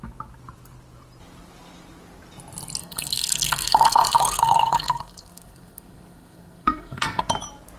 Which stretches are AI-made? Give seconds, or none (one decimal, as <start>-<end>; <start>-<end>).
2.8-7.2